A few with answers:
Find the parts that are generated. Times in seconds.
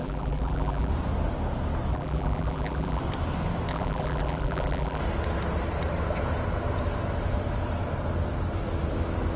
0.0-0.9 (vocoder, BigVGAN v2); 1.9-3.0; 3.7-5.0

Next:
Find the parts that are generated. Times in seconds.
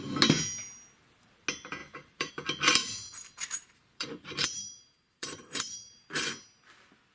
1.8-2.3 (vocoder, BigVGAN v2); 2.8-6.3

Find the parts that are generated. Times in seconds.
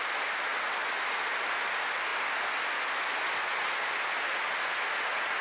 none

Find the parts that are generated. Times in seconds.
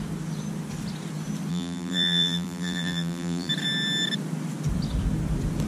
1.5-3.5 (vocoder, BigVGAN v2)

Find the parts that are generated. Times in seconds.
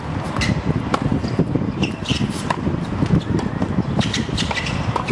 0.0-1.1 (vocoder, BigVGAN v2); 2.9-5.1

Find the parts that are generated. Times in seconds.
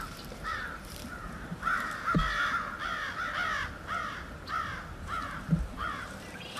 0.0-2.2 (vocoder, BigVGAN v2); 4.9-6.6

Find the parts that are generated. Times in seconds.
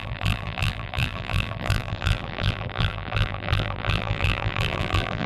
0.0-5.3 (vocoder, BigVGAN v2)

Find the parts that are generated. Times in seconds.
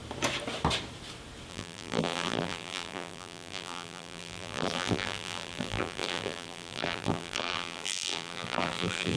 1.5-9.2 (vocoder, BigVGAN v2)